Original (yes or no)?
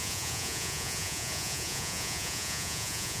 no